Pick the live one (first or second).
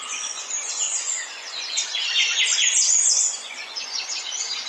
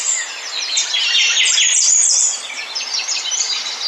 second